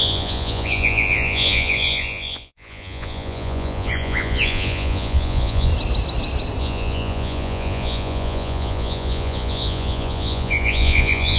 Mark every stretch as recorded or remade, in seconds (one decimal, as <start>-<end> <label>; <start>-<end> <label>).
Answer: 0.0-5.7 remade; 5.7-6.6 recorded; 6.6-11.4 remade